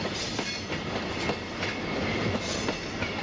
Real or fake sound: real